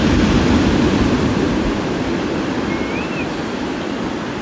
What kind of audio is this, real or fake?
real